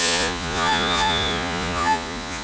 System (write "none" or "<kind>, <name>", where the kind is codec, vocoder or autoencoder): vocoder, Vocos